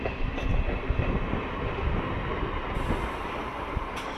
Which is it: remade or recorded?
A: recorded